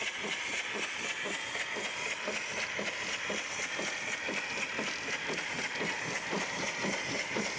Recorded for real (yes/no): yes